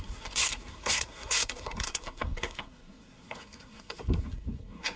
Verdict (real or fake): fake